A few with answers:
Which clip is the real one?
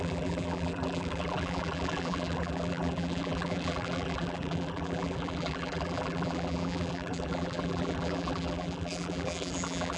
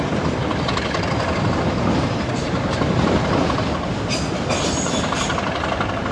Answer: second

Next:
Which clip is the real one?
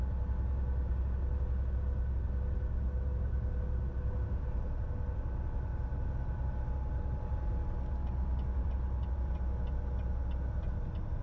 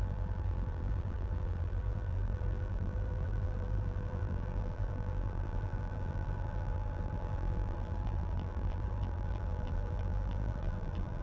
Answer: first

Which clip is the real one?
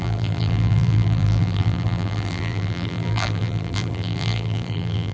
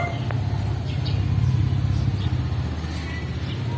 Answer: second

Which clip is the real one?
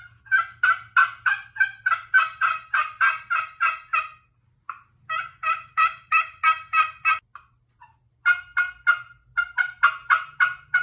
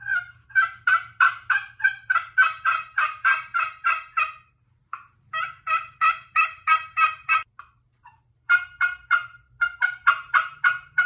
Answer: first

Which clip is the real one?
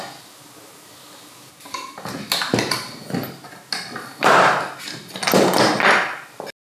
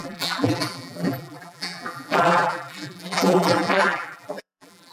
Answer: first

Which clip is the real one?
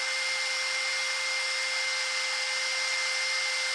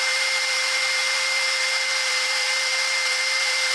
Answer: first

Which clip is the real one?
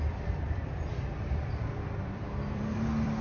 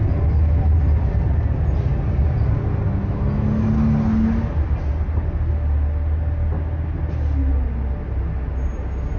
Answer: second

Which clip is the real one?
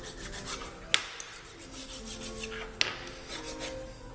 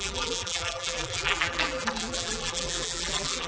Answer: first